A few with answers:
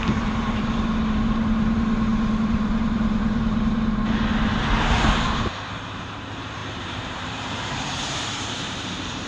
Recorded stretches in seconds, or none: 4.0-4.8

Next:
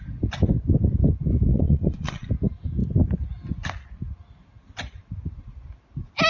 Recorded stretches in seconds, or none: 0.0-1.5; 2.3-6.3